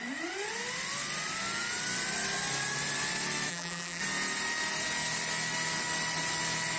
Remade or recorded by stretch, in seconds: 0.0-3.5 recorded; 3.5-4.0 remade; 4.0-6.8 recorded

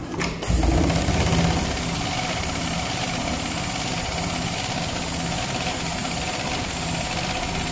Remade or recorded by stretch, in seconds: 0.0-6.0 recorded; 6.0-6.6 remade; 6.6-7.7 recorded